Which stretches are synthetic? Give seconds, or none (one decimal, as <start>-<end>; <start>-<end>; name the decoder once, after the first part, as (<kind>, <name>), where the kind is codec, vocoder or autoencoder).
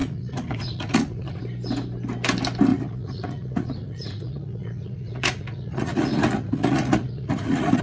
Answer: 0.0-1.4 (vocoder, Vocos); 2.7-7.8